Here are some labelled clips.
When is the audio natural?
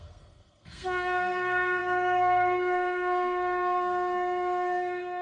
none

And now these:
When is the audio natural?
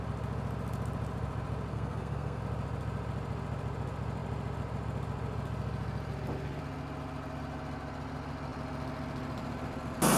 0.0-1.7; 2.4-10.2